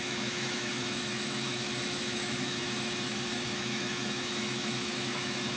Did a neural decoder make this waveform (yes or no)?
yes